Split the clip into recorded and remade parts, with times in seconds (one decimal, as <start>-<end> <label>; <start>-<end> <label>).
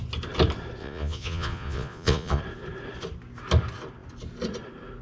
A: 0.0-0.8 recorded; 0.8-2.4 remade; 2.4-5.0 recorded